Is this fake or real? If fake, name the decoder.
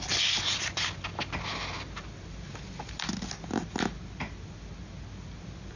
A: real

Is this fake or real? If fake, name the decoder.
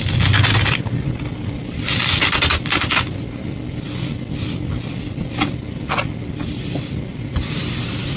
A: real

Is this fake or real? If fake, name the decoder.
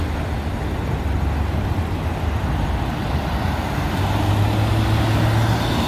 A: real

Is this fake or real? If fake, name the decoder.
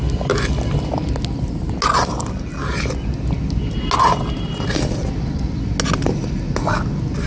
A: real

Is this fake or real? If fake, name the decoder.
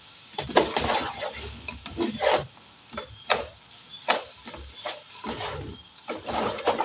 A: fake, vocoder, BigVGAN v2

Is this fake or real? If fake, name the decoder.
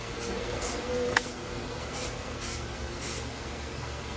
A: fake, codec, SNAC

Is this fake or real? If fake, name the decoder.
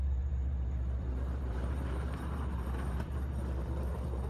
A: fake, vocoder, BigVGAN v2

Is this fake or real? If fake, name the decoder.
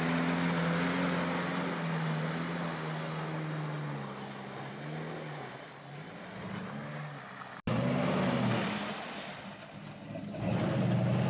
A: real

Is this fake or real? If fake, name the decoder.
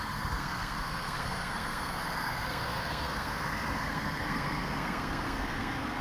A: fake, codec, SNAC